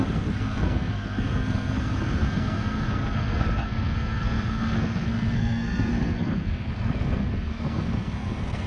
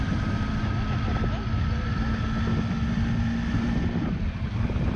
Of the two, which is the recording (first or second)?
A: second